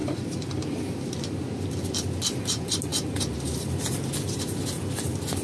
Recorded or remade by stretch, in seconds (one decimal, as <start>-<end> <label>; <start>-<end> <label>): 0.0-0.5 remade; 0.5-5.4 recorded